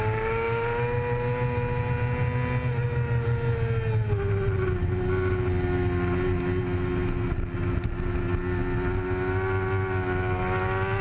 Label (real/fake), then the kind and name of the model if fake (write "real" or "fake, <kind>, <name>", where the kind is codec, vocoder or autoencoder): real